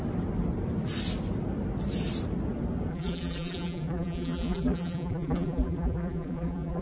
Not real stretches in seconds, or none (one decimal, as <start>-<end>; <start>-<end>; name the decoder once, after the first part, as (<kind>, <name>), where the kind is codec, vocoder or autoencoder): 2.9-6.8 (vocoder, BigVGAN v2)